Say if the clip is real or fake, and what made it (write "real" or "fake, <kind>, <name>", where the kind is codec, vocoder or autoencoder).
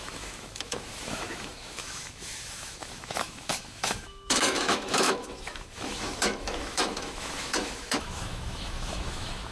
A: fake, autoencoder, DAC-VAE